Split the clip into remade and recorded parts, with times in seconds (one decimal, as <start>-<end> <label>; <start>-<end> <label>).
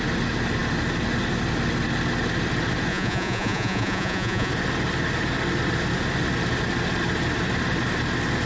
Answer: 0.0-2.9 recorded; 2.9-4.5 remade; 4.5-8.5 recorded